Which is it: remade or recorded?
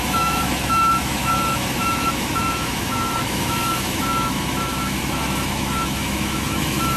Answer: remade